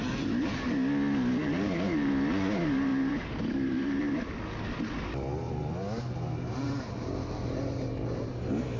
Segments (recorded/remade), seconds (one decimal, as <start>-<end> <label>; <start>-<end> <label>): 0.0-1.4 recorded; 1.4-2.1 remade; 2.1-2.9 recorded; 2.9-4.2 remade; 4.2-6.6 recorded; 6.6-8.3 remade; 8.3-8.8 recorded